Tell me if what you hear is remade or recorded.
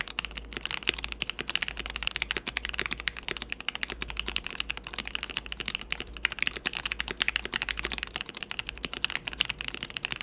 recorded